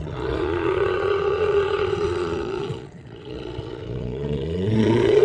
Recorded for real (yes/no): no